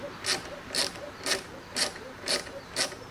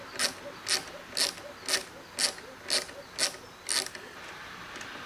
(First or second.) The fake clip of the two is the first